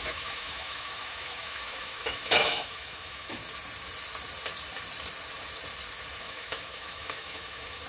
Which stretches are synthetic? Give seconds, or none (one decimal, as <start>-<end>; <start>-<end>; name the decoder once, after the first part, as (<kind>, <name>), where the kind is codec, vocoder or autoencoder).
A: 0.0-3.4 (autoencoder, DAC-VAE); 6.2-7.9